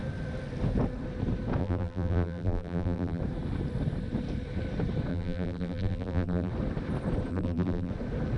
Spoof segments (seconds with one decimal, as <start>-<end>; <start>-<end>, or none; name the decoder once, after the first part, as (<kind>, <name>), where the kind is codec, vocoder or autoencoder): 1.6-3.2 (vocoder, BigVGAN v2); 5.1-6.5; 7.3-7.9